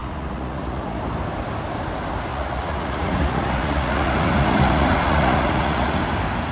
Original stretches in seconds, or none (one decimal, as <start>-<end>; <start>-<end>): 1.0-2.3; 6.0-6.5